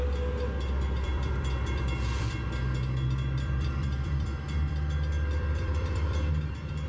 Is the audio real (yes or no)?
no